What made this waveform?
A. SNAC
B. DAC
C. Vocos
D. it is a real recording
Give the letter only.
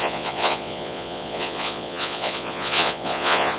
C